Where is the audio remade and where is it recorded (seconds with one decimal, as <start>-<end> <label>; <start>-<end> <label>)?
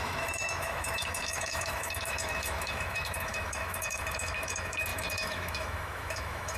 0.0-6.6 remade